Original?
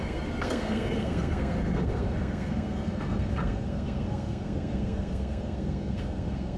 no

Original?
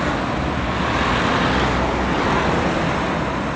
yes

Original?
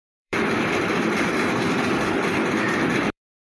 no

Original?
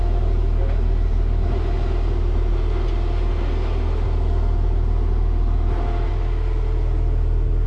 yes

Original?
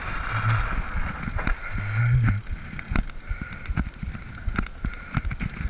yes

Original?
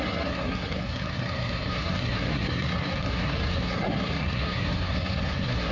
no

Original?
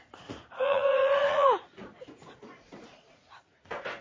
no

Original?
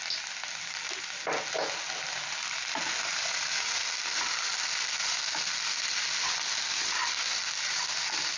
yes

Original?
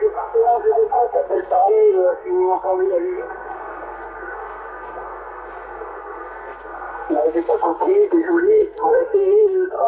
no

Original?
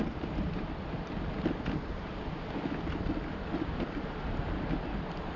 yes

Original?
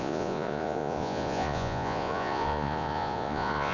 no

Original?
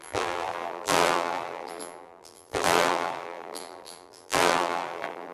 no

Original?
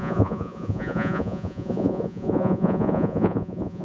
no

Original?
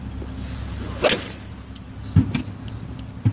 yes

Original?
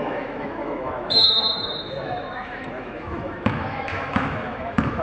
no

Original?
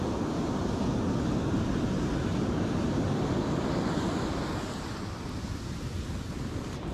yes